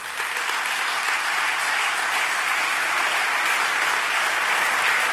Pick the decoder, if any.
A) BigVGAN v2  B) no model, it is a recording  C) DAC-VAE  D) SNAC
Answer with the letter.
B